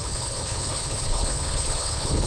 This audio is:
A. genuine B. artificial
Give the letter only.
B